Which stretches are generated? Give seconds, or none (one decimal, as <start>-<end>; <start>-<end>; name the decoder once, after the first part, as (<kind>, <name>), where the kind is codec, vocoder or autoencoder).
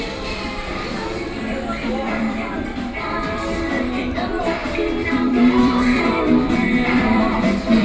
0.0-7.8 (vocoder, BigVGAN v2)